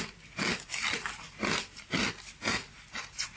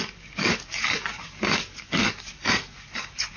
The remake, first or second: second